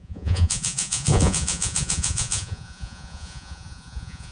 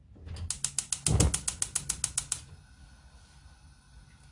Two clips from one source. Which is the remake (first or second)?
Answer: first